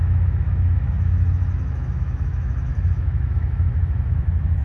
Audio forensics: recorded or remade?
remade